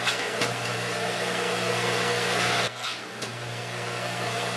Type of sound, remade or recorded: remade